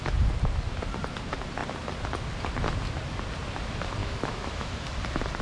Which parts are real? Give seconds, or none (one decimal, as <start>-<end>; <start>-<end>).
0.0-4.0; 4.8-5.4